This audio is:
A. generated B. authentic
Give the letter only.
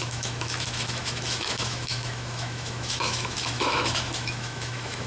A